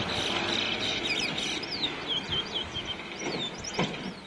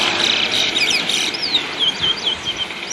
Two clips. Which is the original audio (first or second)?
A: first